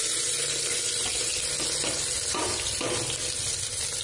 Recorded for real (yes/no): yes